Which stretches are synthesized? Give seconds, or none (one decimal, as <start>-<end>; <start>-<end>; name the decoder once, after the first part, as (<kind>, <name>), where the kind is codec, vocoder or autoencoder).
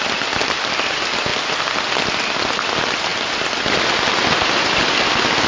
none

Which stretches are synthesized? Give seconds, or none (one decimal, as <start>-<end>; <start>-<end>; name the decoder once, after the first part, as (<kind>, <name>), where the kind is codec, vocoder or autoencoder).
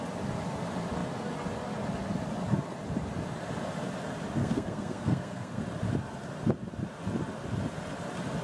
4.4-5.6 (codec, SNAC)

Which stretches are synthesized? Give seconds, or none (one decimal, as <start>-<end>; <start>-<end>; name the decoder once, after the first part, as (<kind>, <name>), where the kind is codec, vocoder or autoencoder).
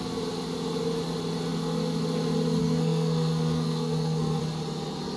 2.6-4.4 (codec, SNAC)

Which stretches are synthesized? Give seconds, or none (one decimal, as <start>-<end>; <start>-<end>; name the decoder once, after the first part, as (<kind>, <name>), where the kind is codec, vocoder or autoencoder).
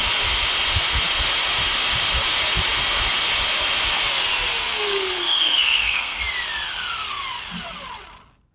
4.7-6.2 (codec, SNAC)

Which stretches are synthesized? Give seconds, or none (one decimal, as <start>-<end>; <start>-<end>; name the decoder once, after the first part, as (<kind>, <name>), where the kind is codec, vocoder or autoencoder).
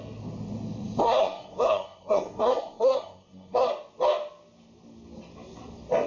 1.0-3.7 (codec, SNAC)